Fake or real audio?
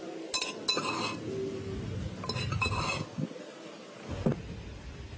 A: real